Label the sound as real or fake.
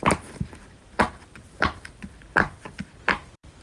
fake